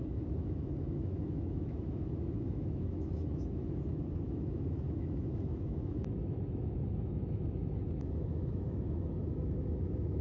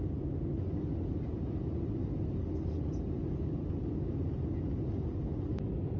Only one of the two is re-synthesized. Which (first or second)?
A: first